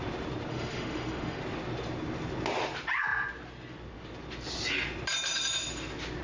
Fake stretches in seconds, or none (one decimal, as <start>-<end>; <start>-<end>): 0.5-1.4